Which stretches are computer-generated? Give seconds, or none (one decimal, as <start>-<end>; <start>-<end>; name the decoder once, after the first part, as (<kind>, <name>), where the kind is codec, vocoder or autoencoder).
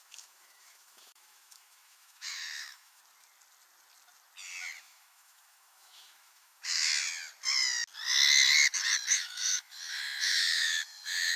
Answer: 0.0-3.0 (autoencoder, DAC-VAE); 4.8-6.9; 9.1-11.4